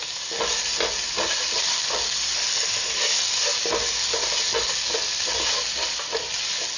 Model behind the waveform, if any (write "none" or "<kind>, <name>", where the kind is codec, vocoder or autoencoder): none